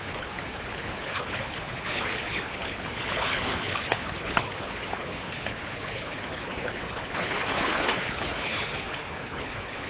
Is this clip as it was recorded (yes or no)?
no